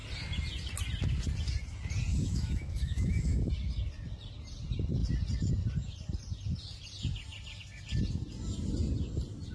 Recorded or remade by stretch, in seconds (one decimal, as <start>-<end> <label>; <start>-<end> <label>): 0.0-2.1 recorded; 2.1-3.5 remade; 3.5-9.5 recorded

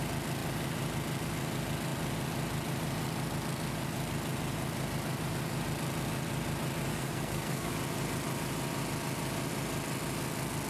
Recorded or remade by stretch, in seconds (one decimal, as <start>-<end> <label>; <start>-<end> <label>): 0.0-6.9 recorded; 6.9-7.7 remade; 7.7-10.7 recorded

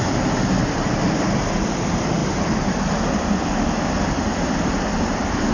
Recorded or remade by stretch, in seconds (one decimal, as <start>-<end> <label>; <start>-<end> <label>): 0.0-5.5 recorded

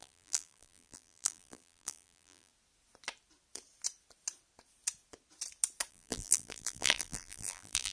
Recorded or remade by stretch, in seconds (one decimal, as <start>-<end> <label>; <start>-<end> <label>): 0.0-2.5 remade; 2.5-5.9 recorded; 5.9-7.9 remade